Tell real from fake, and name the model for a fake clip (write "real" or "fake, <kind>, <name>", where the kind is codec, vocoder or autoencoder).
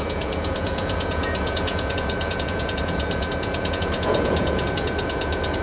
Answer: fake, vocoder, Vocos